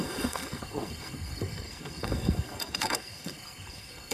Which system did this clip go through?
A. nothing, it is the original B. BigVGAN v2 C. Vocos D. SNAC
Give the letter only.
D